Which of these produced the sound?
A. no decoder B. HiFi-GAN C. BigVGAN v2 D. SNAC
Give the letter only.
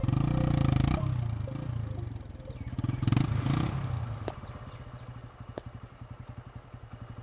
A